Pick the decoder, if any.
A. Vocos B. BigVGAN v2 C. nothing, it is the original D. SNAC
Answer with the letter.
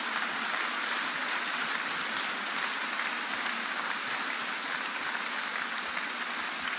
C